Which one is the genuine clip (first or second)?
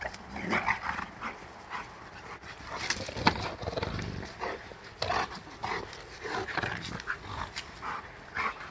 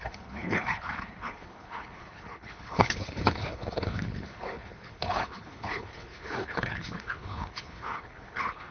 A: first